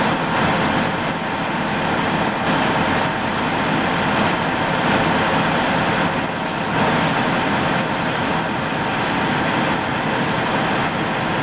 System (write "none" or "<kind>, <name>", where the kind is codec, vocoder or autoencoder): none